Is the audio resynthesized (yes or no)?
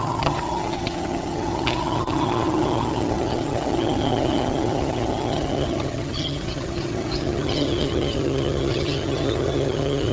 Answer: yes